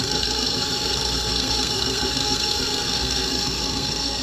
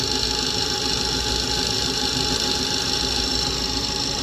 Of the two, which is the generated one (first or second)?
first